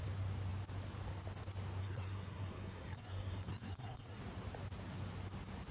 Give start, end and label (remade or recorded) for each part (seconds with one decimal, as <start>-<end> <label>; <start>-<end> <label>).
0.0-1.8 recorded; 1.8-4.2 remade; 4.2-5.7 recorded